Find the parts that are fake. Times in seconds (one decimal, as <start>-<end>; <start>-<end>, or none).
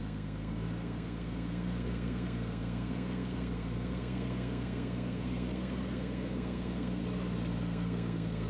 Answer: 0.0-7.0; 7.6-8.5